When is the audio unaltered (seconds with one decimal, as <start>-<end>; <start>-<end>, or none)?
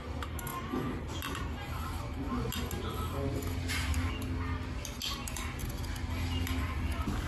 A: 0.0-7.3